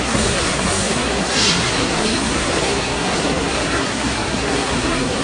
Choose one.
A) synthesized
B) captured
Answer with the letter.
A